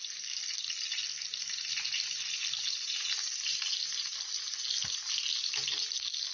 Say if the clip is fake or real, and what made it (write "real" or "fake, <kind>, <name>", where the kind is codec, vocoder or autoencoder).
real